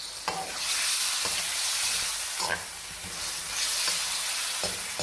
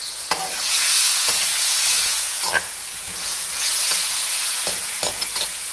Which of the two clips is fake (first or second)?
second